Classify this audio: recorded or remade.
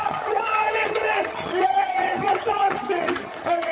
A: remade